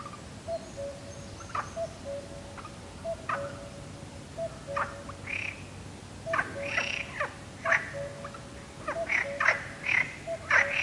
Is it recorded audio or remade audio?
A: recorded